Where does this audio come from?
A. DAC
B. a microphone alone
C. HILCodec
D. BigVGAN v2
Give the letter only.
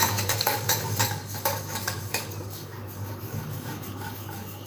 A